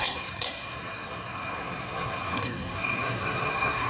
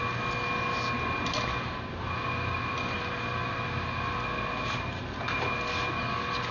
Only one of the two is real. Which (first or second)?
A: second